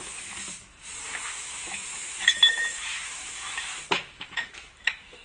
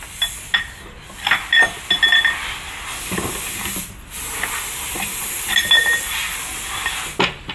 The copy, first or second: first